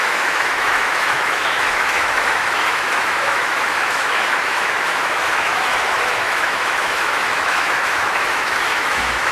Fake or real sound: fake